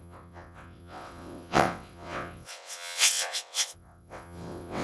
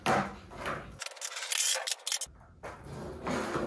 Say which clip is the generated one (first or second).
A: first